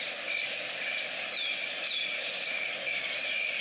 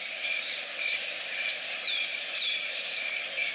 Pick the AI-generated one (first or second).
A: second